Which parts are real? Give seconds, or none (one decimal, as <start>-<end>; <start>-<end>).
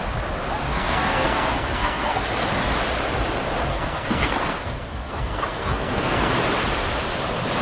0.0-0.7; 2.2-3.7; 6.3-7.6